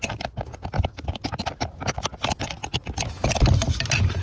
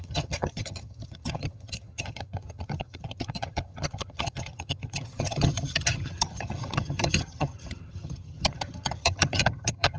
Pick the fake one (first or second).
second